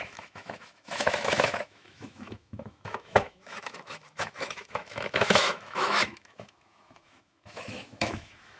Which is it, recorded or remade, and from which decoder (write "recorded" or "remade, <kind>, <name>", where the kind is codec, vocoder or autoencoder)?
remade, autoencoder, DAC-VAE